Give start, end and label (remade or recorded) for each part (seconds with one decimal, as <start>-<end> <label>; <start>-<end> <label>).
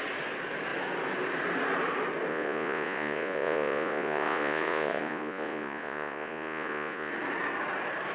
0.0-2.3 recorded; 2.3-7.1 remade; 7.1-8.1 recorded